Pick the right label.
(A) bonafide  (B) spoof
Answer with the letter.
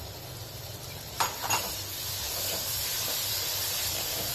B